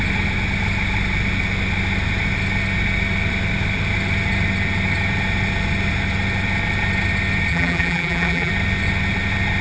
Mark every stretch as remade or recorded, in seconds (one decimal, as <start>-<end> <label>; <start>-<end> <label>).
0.0-7.5 recorded; 7.5-8.5 remade; 8.5-9.6 recorded